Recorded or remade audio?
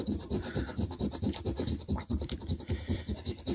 remade